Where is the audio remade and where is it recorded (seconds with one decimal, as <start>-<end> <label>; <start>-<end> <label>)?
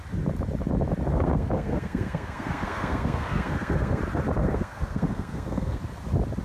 0.0-1.1 recorded; 1.1-4.0 remade; 4.0-4.4 recorded; 4.4-5.8 remade; 5.8-6.4 recorded